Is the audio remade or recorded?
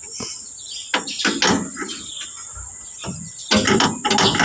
recorded